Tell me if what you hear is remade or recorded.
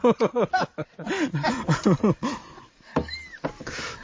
recorded